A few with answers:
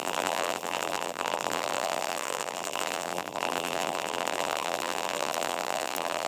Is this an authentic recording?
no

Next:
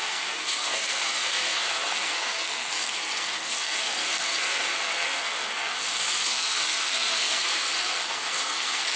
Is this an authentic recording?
no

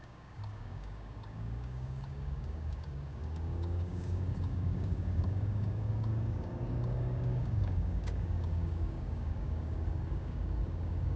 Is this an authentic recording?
no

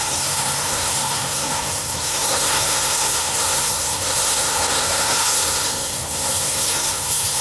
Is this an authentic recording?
no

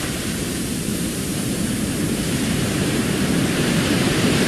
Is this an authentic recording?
no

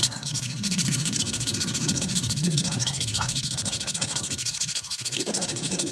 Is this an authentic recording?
no